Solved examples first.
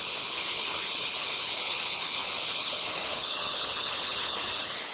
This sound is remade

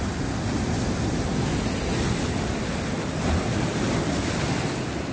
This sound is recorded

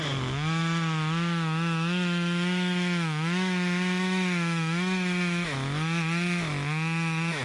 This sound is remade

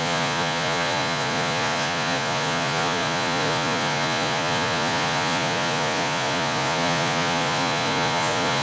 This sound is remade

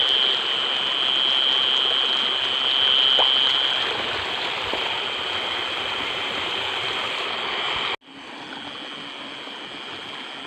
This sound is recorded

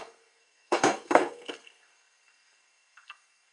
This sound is remade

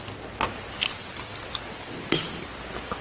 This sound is recorded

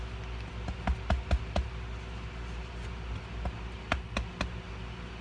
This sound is recorded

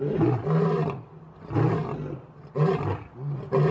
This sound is recorded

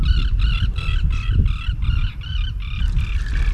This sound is recorded